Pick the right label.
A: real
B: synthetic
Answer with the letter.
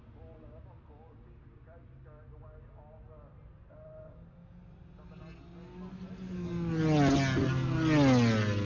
A